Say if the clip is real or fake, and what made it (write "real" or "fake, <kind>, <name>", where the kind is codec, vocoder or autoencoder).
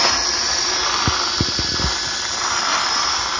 real